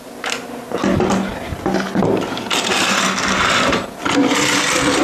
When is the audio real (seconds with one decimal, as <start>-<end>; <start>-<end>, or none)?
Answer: 0.0-5.0